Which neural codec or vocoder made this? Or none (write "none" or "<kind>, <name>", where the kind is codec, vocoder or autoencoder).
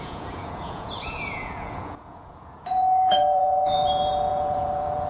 vocoder, Vocos